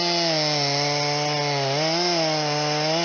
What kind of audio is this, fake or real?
real